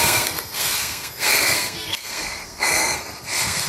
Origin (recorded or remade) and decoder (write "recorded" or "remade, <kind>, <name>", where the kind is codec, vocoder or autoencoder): remade, codec, SNAC